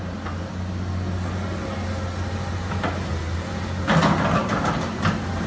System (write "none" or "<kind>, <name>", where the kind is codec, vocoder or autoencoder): none